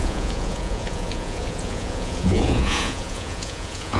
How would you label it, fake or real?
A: fake